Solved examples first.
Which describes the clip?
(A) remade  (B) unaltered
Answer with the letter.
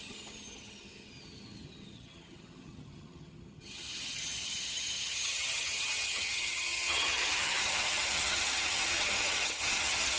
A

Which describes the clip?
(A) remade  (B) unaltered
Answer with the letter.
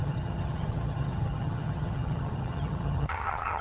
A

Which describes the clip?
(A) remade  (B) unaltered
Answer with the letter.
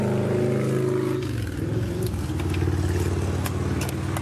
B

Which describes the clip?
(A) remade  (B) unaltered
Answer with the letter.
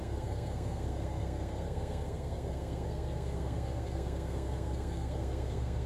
A